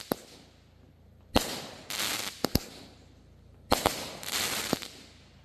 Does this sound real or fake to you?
real